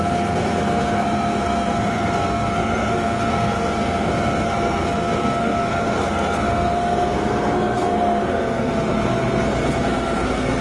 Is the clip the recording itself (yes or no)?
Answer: no